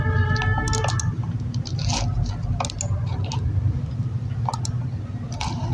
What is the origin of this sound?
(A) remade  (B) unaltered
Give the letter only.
B